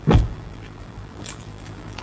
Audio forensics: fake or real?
fake